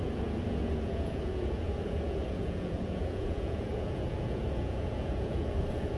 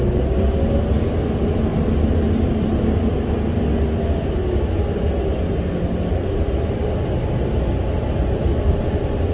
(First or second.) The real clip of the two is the second